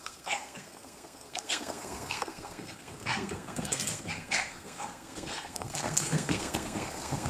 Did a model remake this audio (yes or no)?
yes